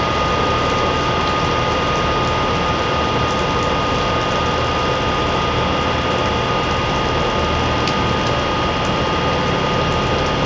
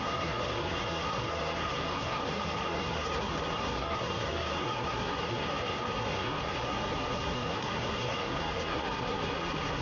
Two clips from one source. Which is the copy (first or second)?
second